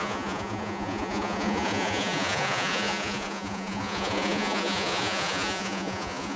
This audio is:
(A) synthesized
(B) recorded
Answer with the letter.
A